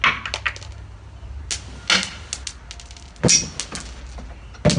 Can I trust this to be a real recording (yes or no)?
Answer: yes